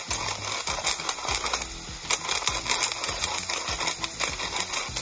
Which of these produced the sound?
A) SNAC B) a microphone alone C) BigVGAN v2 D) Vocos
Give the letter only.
B